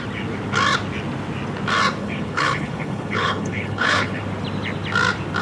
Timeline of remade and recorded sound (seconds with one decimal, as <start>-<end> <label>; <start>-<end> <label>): 0.0-2.0 recorded; 2.0-4.2 remade; 4.2-5.4 recorded